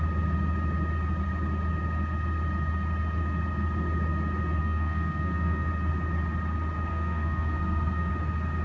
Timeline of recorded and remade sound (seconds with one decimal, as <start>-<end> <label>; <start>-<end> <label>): 0.0-4.6 recorded; 4.6-5.7 remade; 5.7-6.9 recorded; 6.9-8.1 remade; 8.1-8.6 recorded